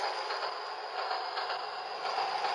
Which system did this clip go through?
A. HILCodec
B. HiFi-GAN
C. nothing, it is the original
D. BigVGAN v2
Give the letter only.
C